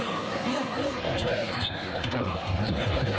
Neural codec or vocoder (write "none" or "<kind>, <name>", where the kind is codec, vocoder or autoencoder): codec, SNAC